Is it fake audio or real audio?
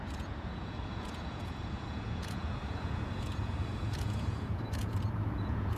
fake